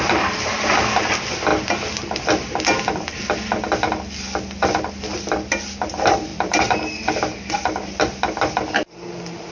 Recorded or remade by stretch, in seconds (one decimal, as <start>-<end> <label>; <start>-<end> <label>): 0.0-9.5 recorded